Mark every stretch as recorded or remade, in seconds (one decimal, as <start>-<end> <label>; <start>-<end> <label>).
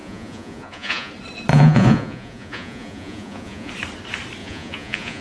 0.0-1.1 remade; 1.1-1.5 recorded; 1.5-3.7 remade; 3.7-4.4 recorded; 4.4-5.2 remade